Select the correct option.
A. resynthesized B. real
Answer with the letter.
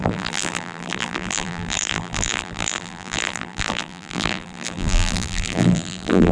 A